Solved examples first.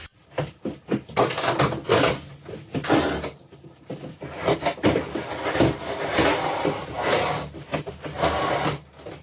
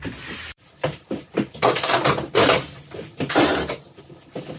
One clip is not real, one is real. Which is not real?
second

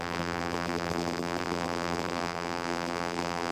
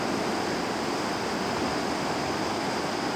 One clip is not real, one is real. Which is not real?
first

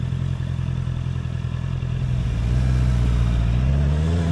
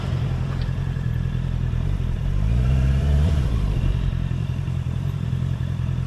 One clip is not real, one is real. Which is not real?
second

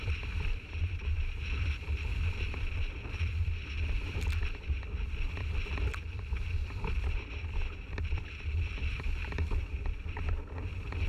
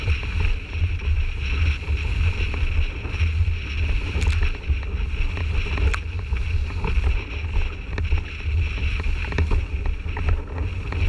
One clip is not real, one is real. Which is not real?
first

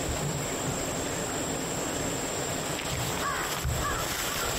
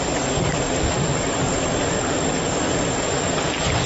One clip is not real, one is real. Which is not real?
second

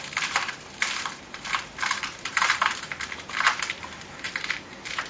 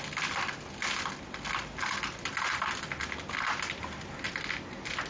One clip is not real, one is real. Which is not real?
first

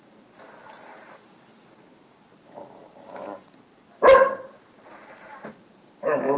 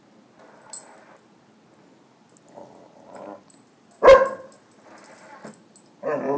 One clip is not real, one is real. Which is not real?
first